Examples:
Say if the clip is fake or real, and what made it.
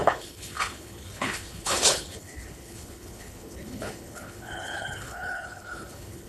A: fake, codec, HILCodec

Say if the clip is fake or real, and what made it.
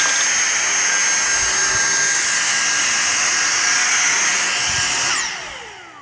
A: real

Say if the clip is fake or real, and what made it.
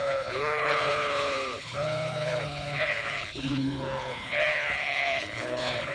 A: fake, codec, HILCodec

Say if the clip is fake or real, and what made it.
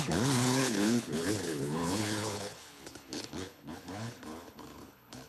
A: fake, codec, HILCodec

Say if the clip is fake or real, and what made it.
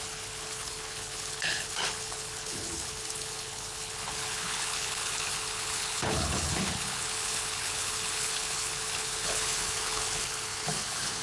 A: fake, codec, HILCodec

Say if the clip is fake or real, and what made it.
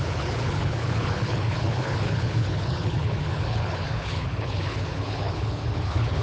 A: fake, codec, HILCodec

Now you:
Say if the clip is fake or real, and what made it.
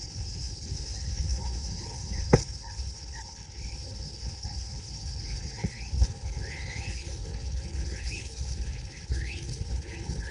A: fake, codec, HILCodec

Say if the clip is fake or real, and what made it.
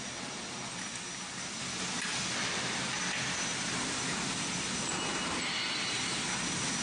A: real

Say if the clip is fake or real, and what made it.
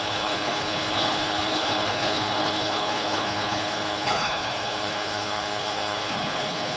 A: fake, codec, HILCodec